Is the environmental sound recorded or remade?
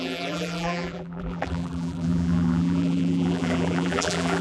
remade